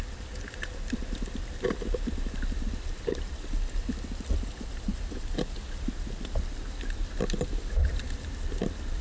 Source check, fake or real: fake